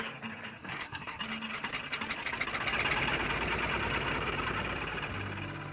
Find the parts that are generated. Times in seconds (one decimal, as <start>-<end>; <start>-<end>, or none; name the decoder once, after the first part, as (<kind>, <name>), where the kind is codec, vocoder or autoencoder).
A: 0.6-1.2 (codec, SNAC)